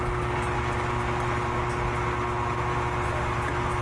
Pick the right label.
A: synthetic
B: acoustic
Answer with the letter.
B